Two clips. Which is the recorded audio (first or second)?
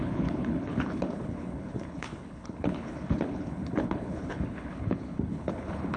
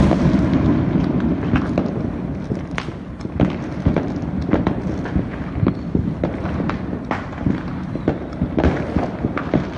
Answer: second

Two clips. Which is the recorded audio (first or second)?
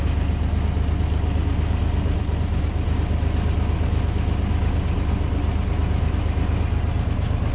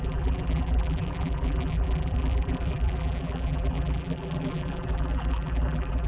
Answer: first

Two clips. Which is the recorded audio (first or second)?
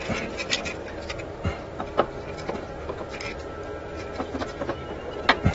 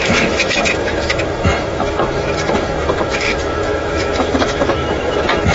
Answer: first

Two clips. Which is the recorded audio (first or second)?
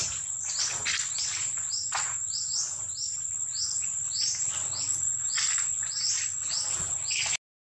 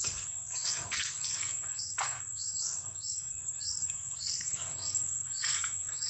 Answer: first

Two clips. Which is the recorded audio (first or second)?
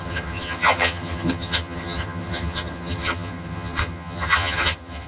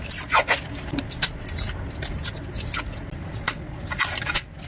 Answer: second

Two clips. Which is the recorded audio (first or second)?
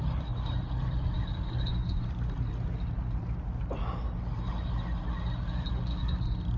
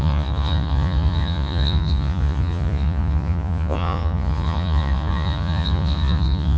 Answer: first